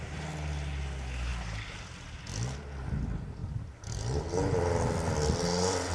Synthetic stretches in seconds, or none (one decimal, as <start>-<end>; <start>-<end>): none